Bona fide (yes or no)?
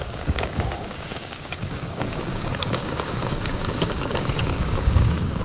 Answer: no